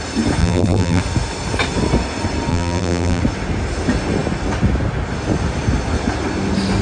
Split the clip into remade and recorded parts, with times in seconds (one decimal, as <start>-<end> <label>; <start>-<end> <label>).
0.0-0.4 recorded; 0.4-1.0 remade; 1.0-2.5 recorded; 2.5-3.2 remade; 3.2-6.8 recorded